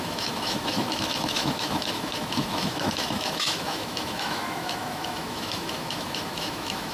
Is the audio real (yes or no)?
no